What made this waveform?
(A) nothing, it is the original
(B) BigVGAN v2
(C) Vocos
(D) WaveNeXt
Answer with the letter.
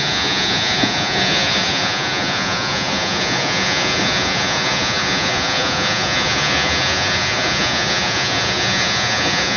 C